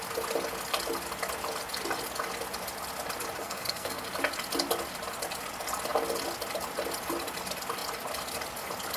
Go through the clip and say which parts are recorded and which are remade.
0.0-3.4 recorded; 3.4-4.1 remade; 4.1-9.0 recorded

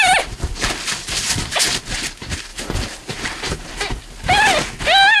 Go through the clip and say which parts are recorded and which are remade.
0.0-5.2 recorded

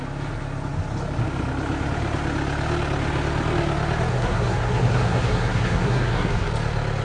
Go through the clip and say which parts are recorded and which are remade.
0.0-4.1 recorded; 4.1-6.5 remade; 6.5-7.0 recorded